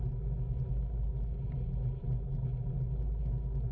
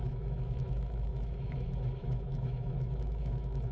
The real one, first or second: first